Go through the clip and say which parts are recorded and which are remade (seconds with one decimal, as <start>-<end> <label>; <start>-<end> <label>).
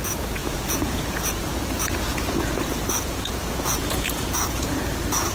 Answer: 0.0-4.8 remade; 4.8-5.3 recorded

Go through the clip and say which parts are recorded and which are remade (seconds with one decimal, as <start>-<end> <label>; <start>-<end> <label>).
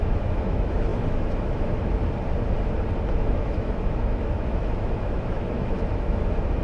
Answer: 0.0-2.0 remade; 2.0-3.1 recorded; 3.1-6.6 remade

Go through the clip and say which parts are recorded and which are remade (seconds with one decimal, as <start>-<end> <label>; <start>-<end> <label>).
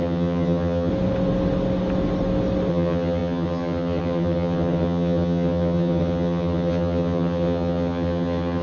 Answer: 0.0-0.9 remade; 0.9-2.7 recorded; 2.7-8.6 remade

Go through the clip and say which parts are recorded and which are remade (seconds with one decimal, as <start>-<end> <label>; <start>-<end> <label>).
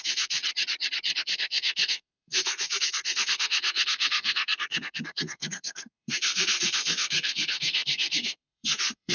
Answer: 0.0-0.4 remade; 0.4-1.2 recorded; 1.2-9.1 remade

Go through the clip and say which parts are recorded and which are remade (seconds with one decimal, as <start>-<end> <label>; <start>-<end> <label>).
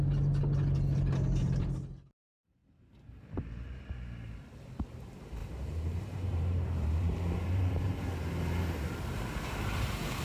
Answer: 0.0-5.4 recorded; 5.4-10.2 remade